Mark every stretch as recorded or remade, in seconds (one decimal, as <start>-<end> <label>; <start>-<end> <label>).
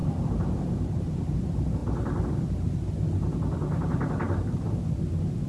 0.0-1.4 recorded; 1.4-1.8 remade; 1.8-5.1 recorded; 5.1-5.5 remade